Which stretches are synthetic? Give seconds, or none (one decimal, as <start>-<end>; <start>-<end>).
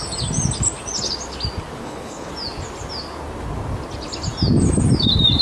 1.8-2.3